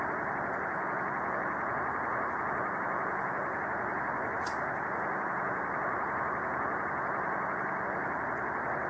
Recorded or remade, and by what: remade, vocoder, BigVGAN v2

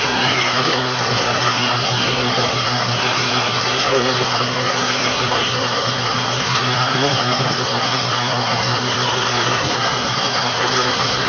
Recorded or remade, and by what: remade, codec, SNAC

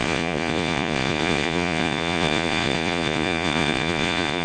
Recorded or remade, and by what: remade, vocoder, Vocos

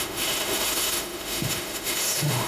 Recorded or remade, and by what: remade, autoencoder, DAC-VAE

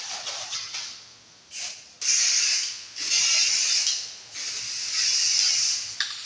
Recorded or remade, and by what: recorded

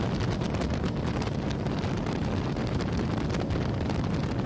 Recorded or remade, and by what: recorded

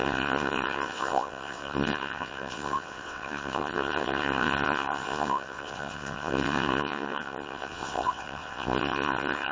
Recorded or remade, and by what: remade, vocoder, WaveNeXt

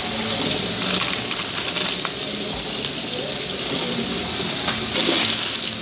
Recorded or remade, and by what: recorded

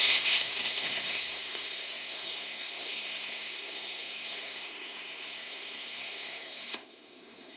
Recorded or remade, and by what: remade, codec, SNAC